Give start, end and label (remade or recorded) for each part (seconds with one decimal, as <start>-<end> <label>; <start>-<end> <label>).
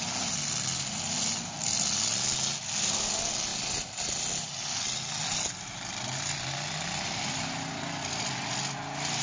0.0-9.2 recorded